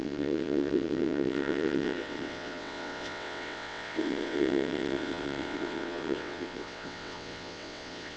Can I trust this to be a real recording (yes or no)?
no